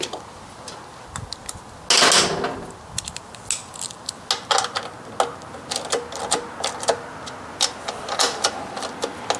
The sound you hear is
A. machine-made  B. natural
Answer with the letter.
B